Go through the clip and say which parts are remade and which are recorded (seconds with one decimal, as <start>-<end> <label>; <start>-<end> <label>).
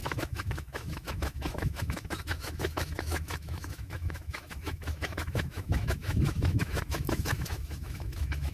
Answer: 0.0-8.5 remade